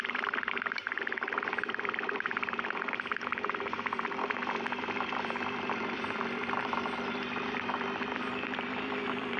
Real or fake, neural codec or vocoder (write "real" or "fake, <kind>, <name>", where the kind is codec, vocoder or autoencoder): fake, vocoder, BigVGAN v2